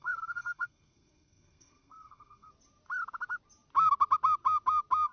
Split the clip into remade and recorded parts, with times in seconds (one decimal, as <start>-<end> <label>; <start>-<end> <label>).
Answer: 0.0-2.5 remade; 2.5-5.1 recorded